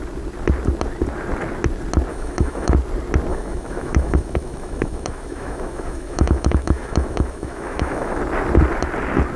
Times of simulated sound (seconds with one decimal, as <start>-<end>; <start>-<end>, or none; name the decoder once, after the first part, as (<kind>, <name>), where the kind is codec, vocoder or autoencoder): 2.1-2.7 (autoencoder, DAC-VAE); 3.3-8.2